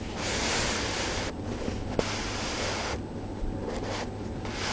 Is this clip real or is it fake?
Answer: real